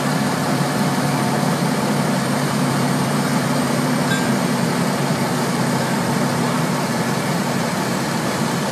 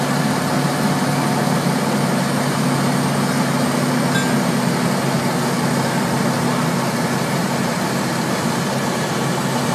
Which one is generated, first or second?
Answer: first